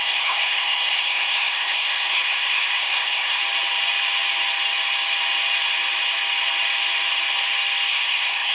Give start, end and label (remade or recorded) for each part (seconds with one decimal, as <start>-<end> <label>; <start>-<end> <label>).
0.0-3.4 remade; 3.4-7.9 recorded; 7.9-8.5 remade

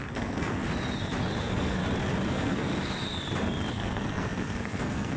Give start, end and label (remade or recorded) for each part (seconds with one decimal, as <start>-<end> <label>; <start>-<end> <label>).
0.0-0.6 remade; 0.6-1.4 recorded; 1.4-1.8 remade; 1.8-2.3 recorded; 2.3-2.7 remade; 2.7-3.7 recorded; 3.7-5.2 remade